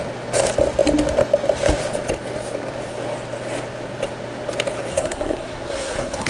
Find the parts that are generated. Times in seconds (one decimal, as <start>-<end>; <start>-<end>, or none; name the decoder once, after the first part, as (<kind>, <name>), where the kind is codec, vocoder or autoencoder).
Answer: 4.9-6.3 (codec, SNAC)